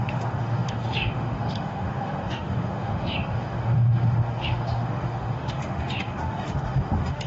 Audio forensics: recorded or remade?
remade